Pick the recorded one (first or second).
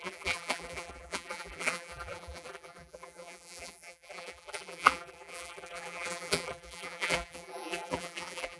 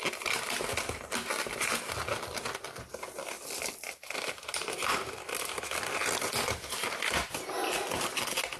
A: second